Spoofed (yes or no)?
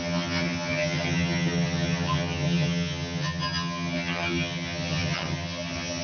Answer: yes